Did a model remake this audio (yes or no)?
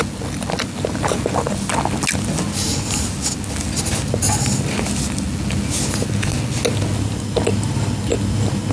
no